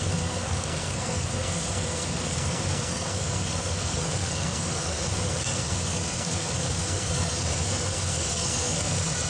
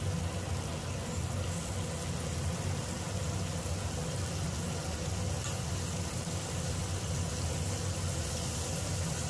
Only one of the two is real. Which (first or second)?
second